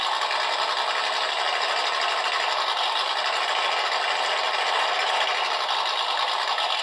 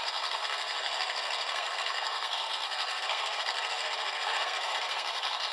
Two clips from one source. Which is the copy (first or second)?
second